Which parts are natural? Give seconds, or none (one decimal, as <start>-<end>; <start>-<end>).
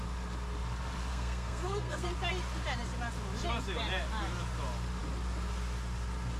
0.0-1.1; 2.1-6.4